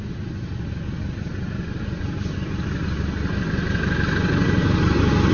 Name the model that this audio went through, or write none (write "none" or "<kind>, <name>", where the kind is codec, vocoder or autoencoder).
none